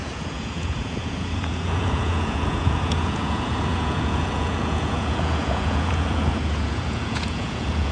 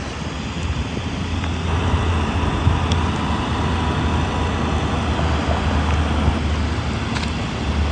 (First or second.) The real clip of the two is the second